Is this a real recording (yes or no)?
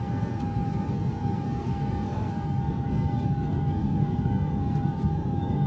no